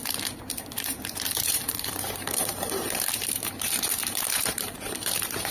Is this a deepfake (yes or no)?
yes